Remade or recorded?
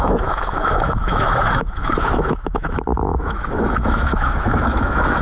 remade